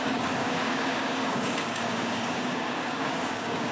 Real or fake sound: fake